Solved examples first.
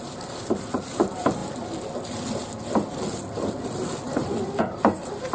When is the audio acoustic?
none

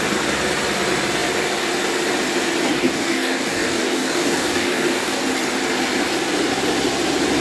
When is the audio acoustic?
0.0-2.7; 5.2-7.4